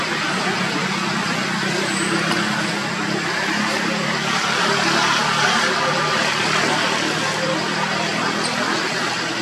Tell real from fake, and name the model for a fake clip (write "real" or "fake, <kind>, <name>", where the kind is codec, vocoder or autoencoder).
real